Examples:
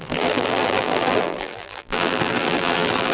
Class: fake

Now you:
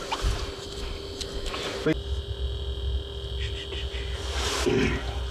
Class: real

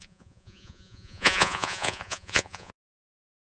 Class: fake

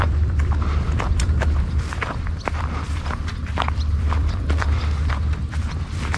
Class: fake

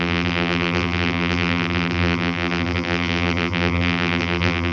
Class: fake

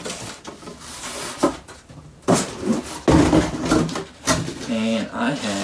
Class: real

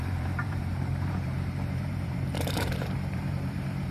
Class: fake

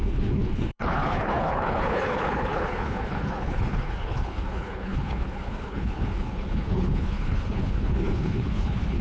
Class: fake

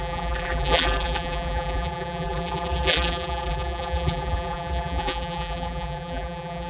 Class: fake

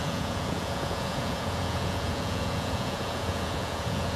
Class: fake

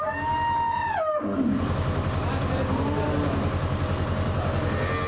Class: real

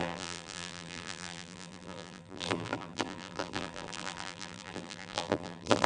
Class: fake